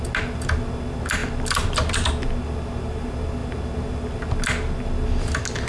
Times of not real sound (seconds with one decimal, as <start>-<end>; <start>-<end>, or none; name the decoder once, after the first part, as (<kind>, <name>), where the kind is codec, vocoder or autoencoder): none